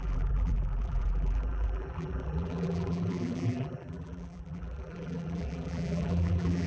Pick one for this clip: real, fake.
fake